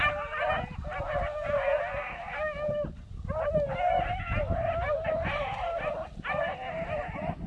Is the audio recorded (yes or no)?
yes